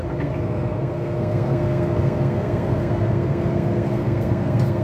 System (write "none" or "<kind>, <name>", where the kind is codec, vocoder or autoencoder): codec, SNAC